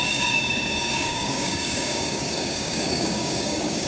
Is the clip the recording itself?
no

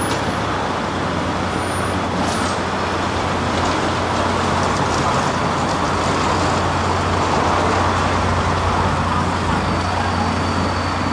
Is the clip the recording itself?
yes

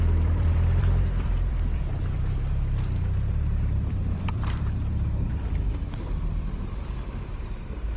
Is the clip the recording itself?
no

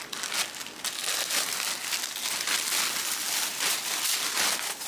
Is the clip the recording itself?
yes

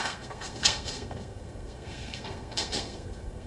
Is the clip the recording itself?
no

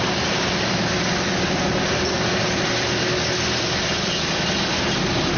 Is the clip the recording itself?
yes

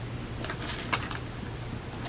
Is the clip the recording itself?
yes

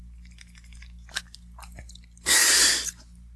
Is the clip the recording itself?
yes